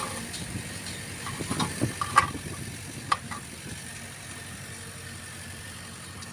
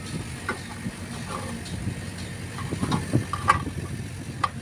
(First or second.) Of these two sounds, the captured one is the second